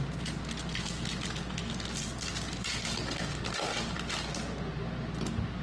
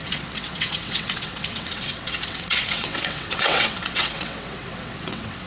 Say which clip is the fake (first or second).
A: second